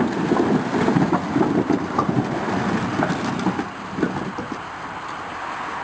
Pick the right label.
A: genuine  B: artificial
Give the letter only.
A